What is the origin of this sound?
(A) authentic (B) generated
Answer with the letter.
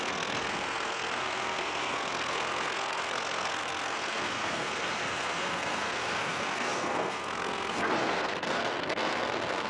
B